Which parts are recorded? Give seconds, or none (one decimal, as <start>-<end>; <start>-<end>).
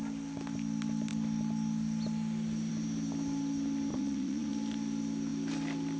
0.0-3.9; 4.5-6.0